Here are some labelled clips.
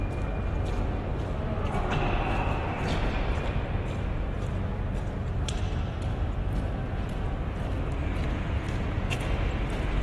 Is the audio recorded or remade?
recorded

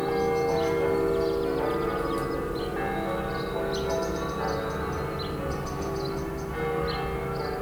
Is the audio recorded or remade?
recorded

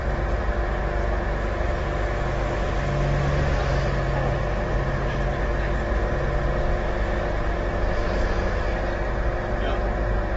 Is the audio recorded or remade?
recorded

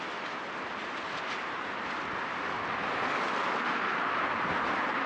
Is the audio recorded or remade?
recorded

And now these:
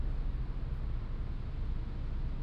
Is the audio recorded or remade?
recorded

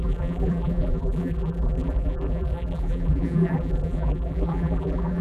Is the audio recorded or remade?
remade